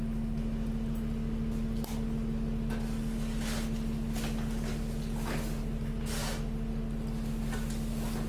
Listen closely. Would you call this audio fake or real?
real